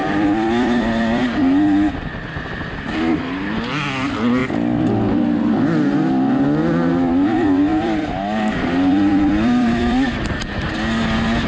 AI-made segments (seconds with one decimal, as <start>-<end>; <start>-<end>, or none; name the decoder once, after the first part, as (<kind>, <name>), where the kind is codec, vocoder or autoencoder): 0.0-1.2 (vocoder, BigVGAN v2); 4.4-5.4; 7.7-10.4